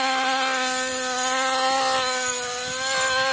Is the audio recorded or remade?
recorded